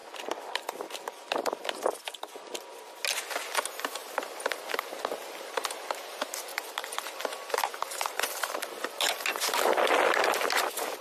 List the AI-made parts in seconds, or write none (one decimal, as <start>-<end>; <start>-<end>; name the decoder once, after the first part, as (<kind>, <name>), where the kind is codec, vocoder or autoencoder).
0.0-1.6 (vocoder, BigVGAN v2); 6.5-8.7